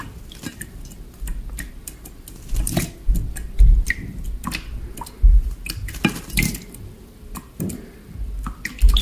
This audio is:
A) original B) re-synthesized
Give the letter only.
A